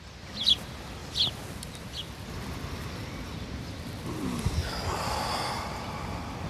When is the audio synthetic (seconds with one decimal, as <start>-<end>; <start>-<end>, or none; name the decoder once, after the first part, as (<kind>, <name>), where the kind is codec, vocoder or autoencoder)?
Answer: 3.3-4.0 (vocoder, BigVGAN v2)